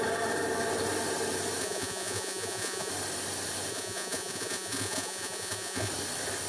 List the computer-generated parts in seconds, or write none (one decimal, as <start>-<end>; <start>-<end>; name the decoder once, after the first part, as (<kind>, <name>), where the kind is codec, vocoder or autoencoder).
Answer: 1.6-2.9 (vocoder, Vocos); 3.7-5.9